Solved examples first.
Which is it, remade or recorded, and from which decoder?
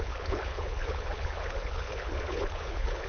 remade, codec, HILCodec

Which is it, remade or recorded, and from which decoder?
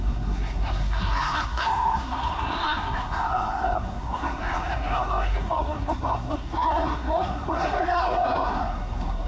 remade, codec, SNAC